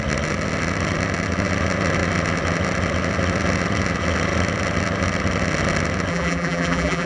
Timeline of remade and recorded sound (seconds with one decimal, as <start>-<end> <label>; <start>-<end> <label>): 0.0-6.1 recorded; 6.1-7.1 remade